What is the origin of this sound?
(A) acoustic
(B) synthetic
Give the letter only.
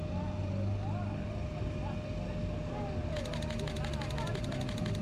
A